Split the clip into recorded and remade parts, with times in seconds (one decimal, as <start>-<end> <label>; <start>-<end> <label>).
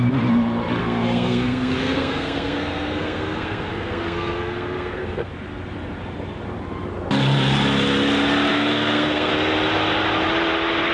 0.0-0.8 recorded; 0.8-5.3 remade; 5.3-8.5 recorded; 8.5-9.3 remade; 9.3-10.9 recorded